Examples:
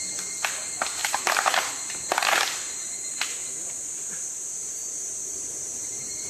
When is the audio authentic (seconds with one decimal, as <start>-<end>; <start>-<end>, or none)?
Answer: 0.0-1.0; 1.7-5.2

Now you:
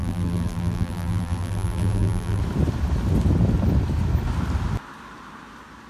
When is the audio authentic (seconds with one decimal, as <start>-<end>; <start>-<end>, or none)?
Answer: 2.4-5.9

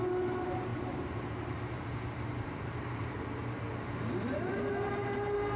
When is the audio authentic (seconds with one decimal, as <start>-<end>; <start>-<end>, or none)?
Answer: 0.0-0.7; 3.7-5.6

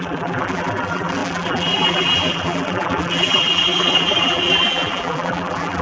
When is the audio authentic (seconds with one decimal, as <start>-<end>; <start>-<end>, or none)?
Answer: none

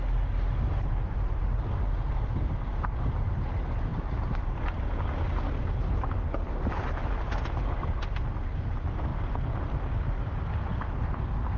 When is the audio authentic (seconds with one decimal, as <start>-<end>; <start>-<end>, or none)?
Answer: 0.0-0.7; 2.4-3.9; 6.4-11.6

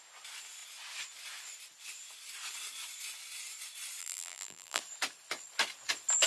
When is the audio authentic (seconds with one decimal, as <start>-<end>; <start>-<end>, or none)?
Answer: 0.0-4.0; 4.8-6.3